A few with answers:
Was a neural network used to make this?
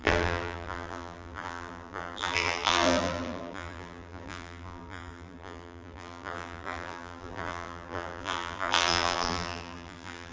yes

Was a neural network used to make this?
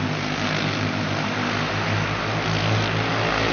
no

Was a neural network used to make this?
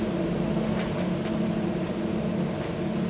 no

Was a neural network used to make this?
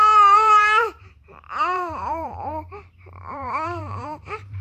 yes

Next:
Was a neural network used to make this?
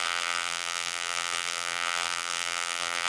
yes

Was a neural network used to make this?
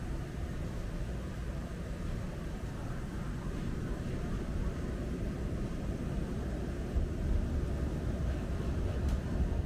yes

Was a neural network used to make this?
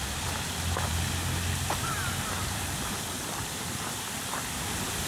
yes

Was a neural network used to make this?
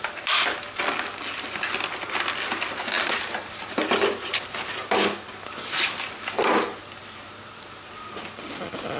no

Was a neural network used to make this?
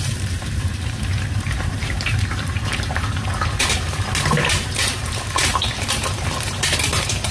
yes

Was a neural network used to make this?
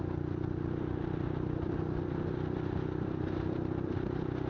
no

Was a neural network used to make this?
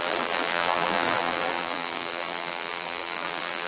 yes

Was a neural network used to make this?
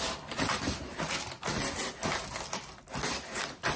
no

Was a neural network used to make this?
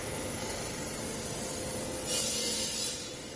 no